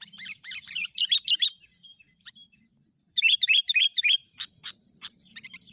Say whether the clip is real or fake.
fake